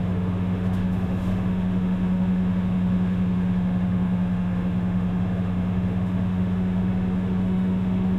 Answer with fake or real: fake